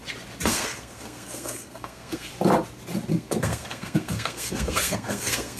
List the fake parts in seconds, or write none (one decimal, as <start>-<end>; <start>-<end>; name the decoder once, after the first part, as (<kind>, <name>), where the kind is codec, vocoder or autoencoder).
0.5-2.3 (codec, SNAC); 3.1-5.6